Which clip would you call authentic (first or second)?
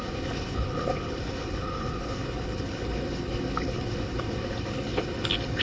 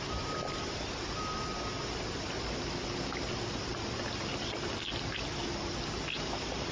second